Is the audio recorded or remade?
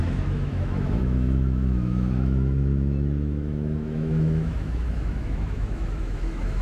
remade